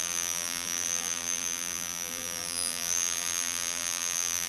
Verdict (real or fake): fake